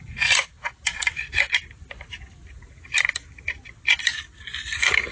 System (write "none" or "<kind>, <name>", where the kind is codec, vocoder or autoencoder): none